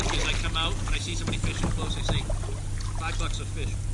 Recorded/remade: recorded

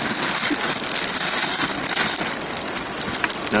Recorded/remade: recorded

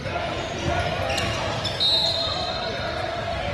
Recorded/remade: recorded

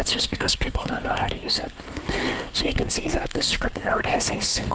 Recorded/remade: remade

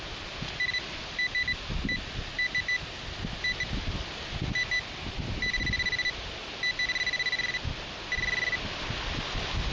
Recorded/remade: recorded